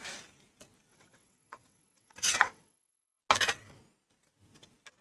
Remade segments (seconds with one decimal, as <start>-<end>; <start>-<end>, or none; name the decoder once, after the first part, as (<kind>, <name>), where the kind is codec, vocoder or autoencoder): 0.9-3.2 (vocoder, WaveNeXt)